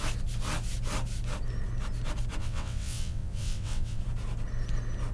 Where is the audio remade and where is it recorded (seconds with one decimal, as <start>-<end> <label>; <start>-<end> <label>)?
0.0-2.4 recorded; 2.4-4.0 remade; 4.0-5.1 recorded